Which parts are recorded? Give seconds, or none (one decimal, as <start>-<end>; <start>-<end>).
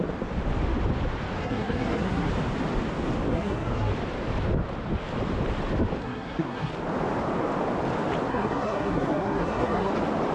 0.0-1.4; 2.3-3.3; 3.9-6.0; 6.7-8.3; 9.9-10.3